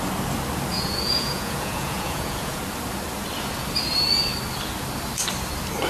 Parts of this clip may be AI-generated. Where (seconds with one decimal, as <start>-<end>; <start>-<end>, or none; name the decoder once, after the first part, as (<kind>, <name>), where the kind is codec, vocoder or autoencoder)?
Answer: 0.7-2.6 (vocoder, Vocos)